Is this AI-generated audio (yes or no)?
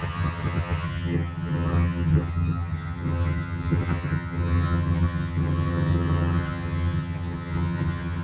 yes